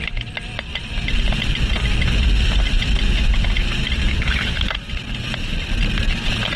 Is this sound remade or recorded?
recorded